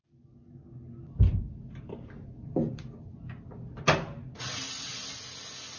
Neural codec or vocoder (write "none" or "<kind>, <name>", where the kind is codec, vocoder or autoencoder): none